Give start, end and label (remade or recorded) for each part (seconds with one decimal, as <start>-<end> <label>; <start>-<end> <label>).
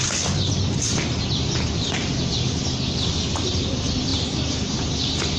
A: 0.0-5.4 recorded